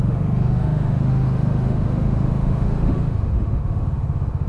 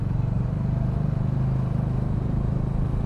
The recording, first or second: second